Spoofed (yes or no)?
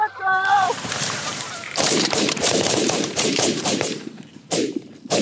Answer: yes